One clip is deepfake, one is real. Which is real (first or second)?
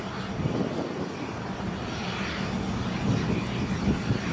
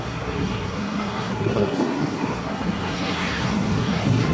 first